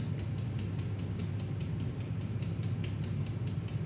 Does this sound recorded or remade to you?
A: recorded